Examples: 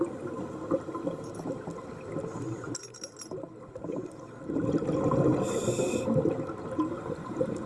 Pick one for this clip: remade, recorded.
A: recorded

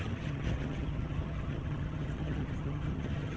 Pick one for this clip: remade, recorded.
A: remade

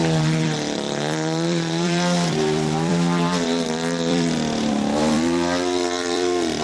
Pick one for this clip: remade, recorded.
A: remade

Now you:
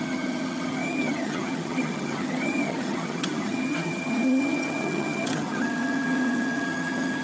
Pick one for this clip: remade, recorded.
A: remade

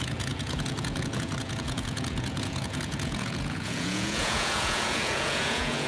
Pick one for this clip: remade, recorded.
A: remade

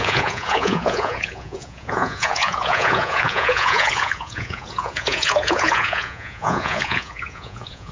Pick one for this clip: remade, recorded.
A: remade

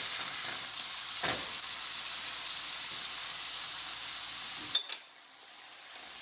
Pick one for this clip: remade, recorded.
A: recorded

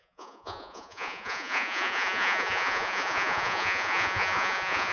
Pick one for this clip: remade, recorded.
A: remade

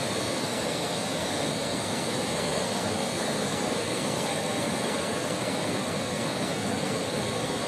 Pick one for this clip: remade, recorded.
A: remade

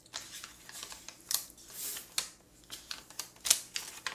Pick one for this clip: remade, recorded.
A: recorded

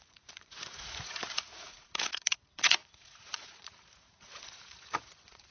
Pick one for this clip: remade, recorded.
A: remade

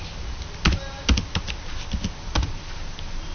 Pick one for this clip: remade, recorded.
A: recorded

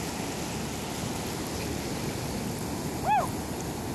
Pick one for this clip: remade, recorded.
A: recorded